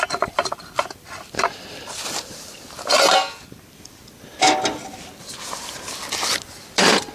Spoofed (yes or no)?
no